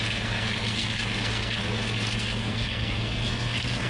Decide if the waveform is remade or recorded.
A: remade